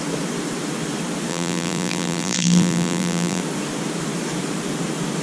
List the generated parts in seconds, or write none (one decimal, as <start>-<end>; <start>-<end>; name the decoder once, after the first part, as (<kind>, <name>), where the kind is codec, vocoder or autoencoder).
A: 1.3-3.4 (vocoder, BigVGAN v2)